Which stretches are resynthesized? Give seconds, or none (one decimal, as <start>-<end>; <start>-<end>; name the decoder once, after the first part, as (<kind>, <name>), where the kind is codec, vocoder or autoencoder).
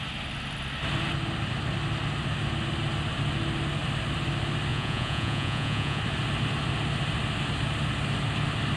4.7-6.0 (vocoder, Vocos)